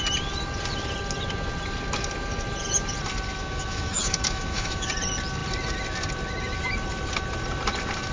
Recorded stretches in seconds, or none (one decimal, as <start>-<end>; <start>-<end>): 0.0-3.4; 4.9-8.1